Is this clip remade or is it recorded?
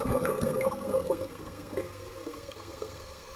remade